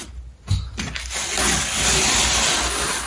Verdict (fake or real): real